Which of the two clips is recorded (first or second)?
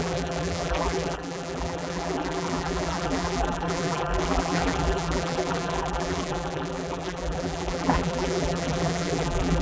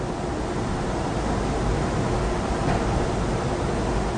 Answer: second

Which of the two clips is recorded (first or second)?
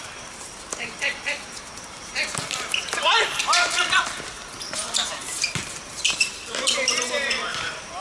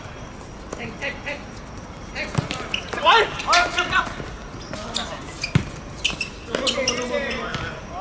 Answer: second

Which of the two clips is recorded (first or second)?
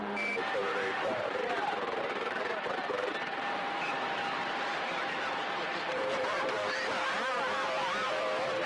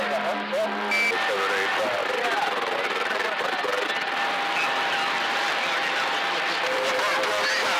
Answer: second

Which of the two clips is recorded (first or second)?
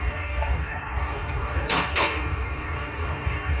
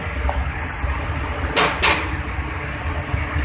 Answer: second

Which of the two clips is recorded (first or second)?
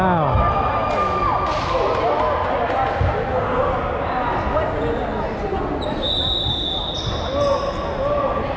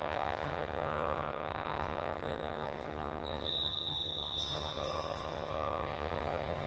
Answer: first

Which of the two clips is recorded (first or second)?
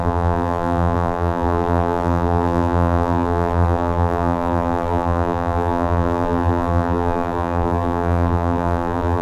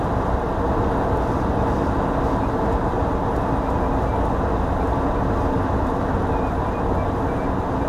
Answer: second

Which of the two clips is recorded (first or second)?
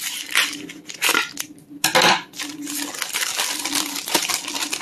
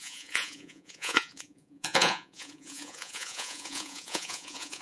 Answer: first